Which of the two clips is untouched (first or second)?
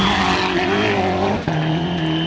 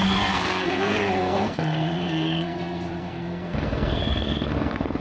first